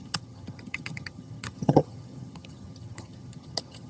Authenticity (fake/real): fake